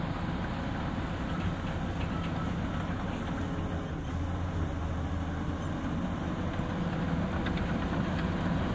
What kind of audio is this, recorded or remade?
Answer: recorded